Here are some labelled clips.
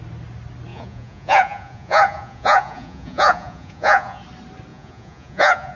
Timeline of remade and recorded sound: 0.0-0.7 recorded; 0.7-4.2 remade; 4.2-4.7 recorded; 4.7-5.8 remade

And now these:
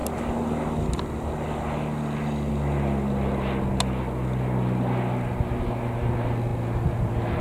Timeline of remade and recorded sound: 0.0-7.4 recorded

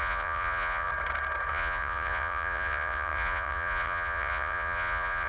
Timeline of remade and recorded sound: 0.0-0.9 remade; 0.9-1.5 recorded; 1.5-5.3 remade

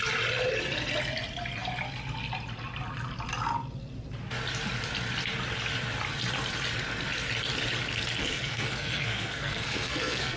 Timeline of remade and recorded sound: 0.0-8.2 recorded; 8.2-10.4 remade

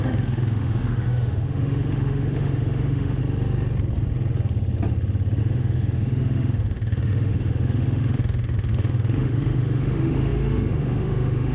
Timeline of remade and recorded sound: 0.0-3.2 remade; 3.2-5.4 recorded; 5.4-11.5 remade

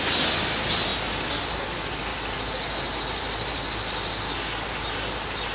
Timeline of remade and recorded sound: 0.0-5.5 recorded

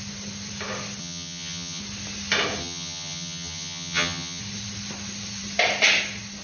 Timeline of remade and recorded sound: 0.0-1.0 recorded; 1.0-1.8 remade; 1.8-2.6 recorded; 2.6-4.4 remade; 4.4-6.4 recorded